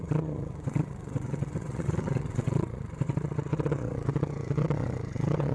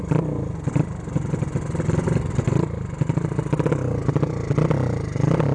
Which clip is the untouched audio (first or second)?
second